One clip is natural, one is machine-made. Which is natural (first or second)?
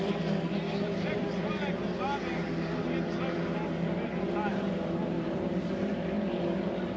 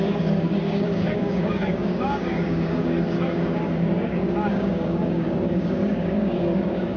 first